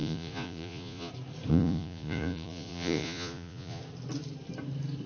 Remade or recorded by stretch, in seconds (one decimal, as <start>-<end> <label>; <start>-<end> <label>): 0.0-1.1 remade; 1.1-1.5 recorded; 1.5-3.8 remade; 3.8-5.1 recorded